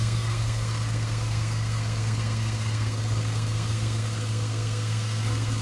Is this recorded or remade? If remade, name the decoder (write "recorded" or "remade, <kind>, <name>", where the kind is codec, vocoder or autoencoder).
remade, codec, SNAC